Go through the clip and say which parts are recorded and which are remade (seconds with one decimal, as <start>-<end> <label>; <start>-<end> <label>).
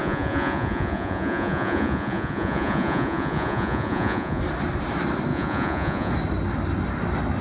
0.0-4.4 remade; 4.4-5.3 recorded; 5.3-6.1 remade; 6.1-7.4 recorded